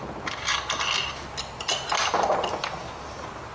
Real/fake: real